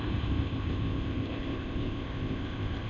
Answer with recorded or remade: remade